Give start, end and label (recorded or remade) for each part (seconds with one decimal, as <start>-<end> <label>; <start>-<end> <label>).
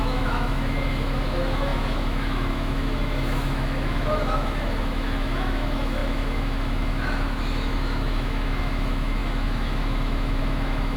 0.0-11.0 remade